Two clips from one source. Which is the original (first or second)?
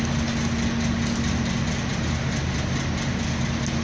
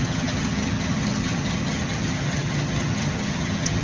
first